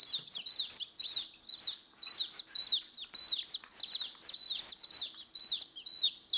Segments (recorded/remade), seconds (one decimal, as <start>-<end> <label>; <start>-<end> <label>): 0.0-0.5 remade; 0.5-6.4 recorded